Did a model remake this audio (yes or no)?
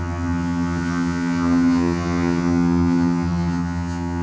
yes